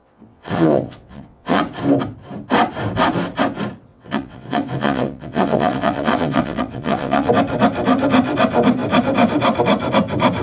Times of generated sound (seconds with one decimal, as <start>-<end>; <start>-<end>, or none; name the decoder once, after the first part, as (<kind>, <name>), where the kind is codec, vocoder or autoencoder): 0.0-1.6 (vocoder, WaveNeXt); 3.9-7.3